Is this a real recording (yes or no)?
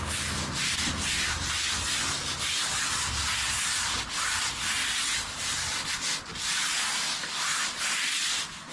yes